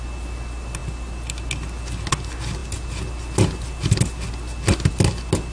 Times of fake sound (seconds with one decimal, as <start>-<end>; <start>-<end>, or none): none